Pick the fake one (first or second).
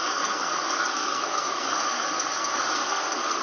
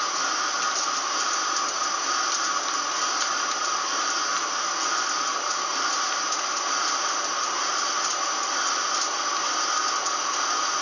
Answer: first